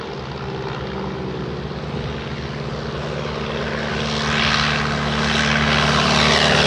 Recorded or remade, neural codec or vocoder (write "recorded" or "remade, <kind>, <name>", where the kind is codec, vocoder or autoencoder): recorded